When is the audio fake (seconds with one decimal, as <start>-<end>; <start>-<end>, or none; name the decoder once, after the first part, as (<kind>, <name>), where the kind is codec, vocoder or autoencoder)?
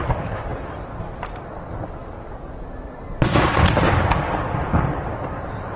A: none